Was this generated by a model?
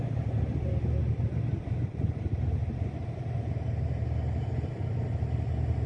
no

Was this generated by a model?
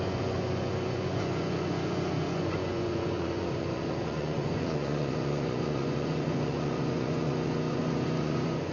yes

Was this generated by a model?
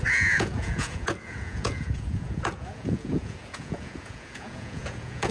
yes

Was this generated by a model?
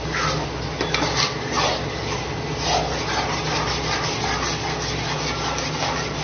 no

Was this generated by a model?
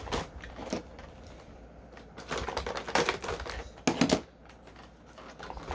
no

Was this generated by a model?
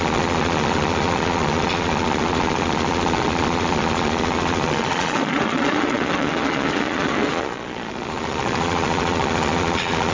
yes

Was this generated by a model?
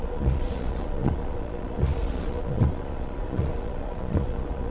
yes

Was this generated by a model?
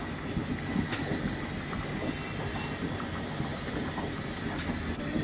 no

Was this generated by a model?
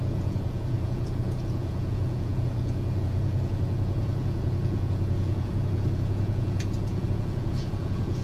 yes